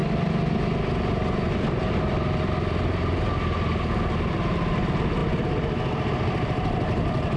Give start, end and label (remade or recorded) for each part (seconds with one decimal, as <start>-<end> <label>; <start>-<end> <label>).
0.0-7.4 recorded